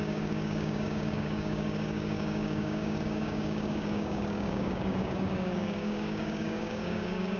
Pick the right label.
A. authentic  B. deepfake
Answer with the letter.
B